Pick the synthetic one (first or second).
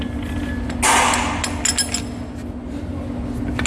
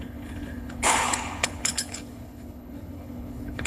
second